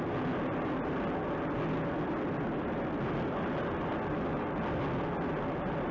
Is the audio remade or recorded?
recorded